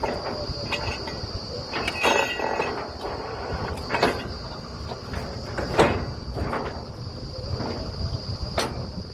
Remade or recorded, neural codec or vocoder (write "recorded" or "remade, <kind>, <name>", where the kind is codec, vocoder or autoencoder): recorded